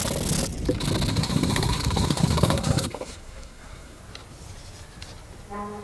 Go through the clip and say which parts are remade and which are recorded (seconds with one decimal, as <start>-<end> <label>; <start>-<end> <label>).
0.0-1.1 recorded; 1.1-4.0 remade; 4.0-5.8 recorded